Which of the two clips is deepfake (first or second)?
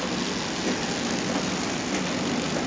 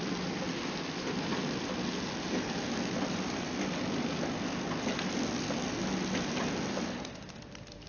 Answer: second